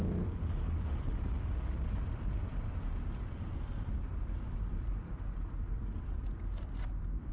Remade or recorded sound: remade